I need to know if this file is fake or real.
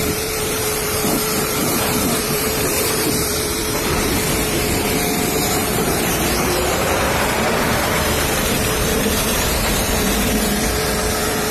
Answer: fake